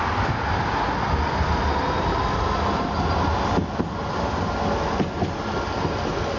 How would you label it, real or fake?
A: real